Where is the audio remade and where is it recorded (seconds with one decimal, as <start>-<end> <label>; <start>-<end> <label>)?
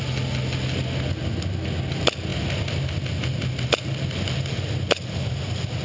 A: 0.0-5.8 recorded